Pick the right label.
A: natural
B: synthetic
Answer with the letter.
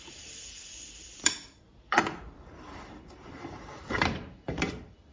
B